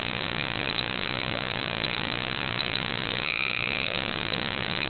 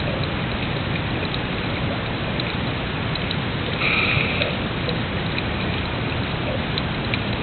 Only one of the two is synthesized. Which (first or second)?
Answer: first